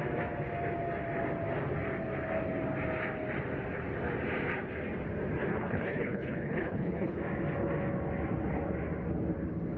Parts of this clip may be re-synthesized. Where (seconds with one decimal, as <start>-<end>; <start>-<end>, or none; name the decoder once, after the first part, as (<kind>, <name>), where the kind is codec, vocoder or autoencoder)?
5.5-7.2 (codec, HILCodec)